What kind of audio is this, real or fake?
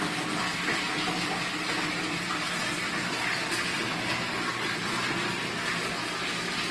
real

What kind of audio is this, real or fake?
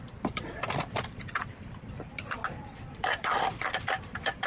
fake